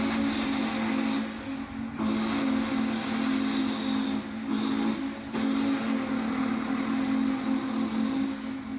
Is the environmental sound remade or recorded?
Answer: recorded